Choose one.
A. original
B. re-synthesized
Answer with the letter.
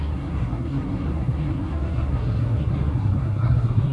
B